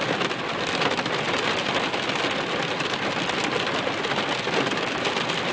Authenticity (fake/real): real